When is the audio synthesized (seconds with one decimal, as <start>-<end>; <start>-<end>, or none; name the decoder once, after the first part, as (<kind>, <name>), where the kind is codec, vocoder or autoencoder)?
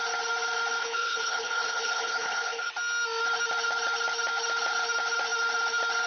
0.8-2.7 (codec, HILCodec)